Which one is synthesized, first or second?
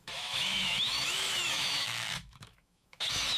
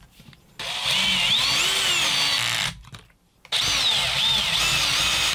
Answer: first